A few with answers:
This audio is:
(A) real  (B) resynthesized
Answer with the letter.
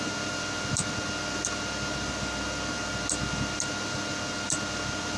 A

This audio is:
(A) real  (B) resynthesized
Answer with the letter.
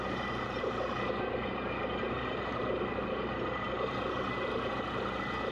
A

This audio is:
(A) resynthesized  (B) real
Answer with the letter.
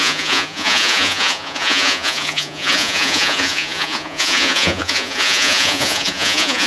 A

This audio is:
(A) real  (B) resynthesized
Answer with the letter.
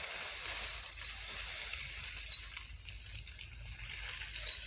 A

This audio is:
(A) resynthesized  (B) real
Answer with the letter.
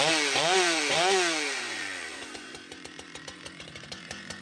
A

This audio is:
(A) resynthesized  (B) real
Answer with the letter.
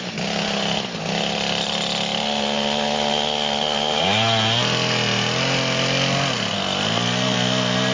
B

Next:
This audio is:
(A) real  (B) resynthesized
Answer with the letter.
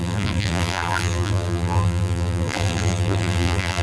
B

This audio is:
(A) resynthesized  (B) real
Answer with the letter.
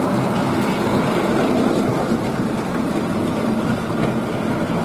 B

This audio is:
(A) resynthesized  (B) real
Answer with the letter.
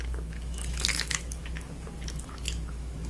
A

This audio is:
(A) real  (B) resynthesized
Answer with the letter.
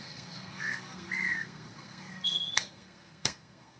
B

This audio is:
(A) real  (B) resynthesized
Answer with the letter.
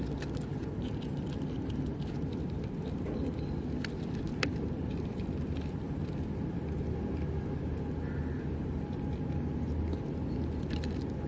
B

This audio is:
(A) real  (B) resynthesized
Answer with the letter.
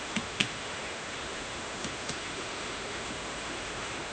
B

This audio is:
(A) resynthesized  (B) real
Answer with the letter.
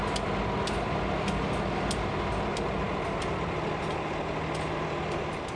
B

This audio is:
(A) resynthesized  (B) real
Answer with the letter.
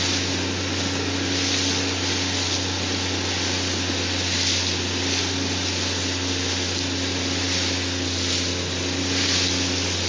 B